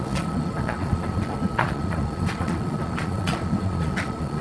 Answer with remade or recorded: remade